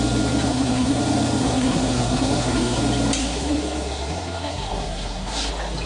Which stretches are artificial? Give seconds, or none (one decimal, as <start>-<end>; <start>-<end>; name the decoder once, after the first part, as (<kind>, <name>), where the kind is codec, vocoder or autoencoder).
0.5-1.0 (codec, SNAC); 1.4-2.8; 3.2-5.5